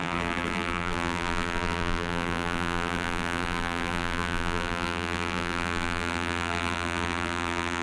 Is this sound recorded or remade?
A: remade